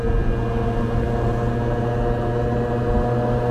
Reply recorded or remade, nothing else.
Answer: recorded